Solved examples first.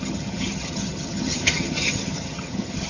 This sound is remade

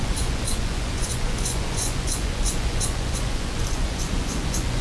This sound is remade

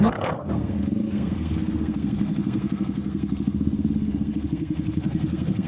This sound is remade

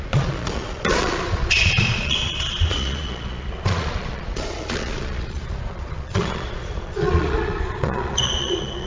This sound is remade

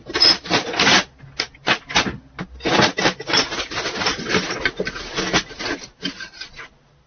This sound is recorded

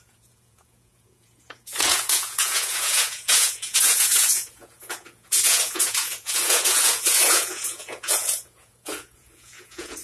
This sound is remade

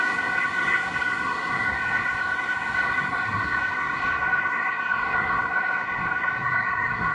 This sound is remade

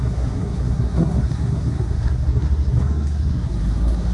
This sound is remade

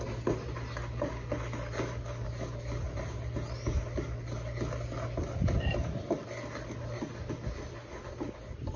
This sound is recorded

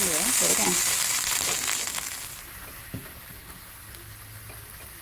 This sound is recorded